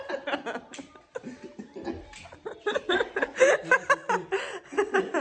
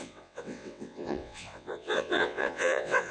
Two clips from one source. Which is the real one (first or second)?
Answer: first